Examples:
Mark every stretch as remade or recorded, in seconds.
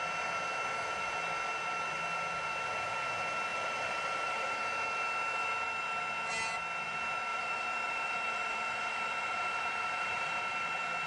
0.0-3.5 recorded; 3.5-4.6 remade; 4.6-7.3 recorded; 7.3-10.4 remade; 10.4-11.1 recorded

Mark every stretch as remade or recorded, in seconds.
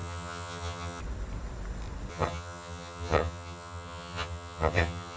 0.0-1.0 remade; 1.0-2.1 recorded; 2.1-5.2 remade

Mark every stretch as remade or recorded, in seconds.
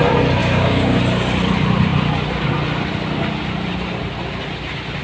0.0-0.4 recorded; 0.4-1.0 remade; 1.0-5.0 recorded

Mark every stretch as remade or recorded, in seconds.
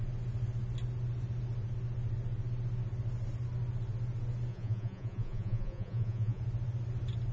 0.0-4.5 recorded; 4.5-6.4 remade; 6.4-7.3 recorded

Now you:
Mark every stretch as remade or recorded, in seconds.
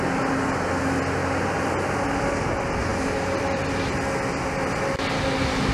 0.0-2.9 recorded; 2.9-3.6 remade; 3.6-5.7 recorded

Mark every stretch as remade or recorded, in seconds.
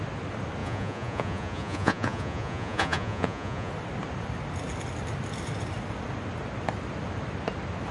0.0-0.6 recorded; 0.6-3.7 remade; 3.7-7.9 recorded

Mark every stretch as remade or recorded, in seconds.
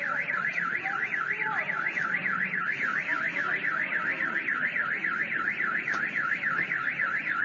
0.0-2.2 remade; 2.2-2.7 recorded; 2.7-7.4 remade